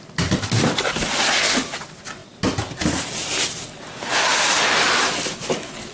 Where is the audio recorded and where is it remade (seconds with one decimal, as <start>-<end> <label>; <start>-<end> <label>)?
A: 0.0-5.9 recorded